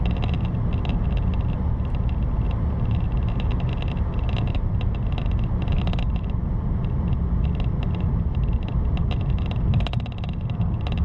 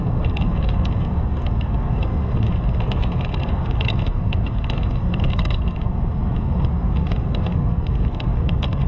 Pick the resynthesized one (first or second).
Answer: second